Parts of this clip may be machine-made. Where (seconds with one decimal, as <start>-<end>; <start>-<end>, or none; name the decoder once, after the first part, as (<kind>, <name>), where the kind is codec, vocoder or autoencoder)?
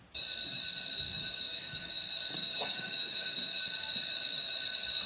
1.2-1.9 (codec, DAC); 2.3-3.6